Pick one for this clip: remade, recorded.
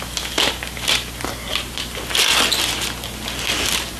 recorded